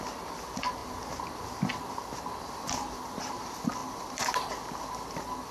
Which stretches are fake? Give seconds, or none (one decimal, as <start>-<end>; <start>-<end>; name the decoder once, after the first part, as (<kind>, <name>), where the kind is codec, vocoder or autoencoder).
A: none